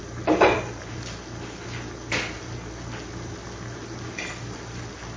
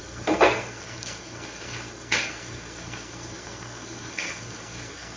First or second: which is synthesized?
second